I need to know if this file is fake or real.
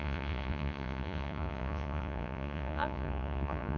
fake